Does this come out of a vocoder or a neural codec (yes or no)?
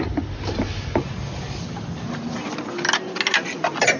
no